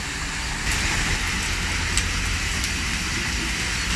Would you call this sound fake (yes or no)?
no